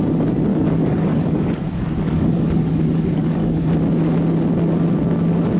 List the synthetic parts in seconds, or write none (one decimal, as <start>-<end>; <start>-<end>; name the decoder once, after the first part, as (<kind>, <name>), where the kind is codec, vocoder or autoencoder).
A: 0.5-3.5 (codec, DAC)